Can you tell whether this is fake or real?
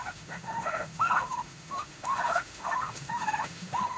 fake